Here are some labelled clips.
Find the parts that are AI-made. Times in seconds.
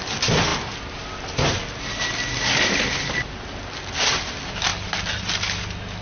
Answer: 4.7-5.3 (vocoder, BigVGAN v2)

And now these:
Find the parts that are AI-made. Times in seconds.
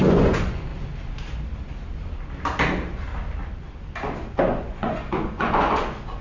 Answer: 0.0-0.7 (vocoder, Vocos); 4.4-6.2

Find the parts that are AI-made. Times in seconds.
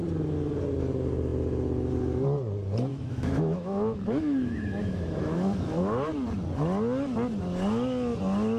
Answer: 2.9-6.1 (autoencoder, DAC-VAE)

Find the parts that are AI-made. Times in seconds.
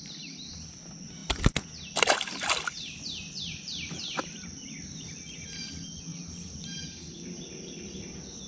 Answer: 6.1-8.0 (vocoder, BigVGAN v2)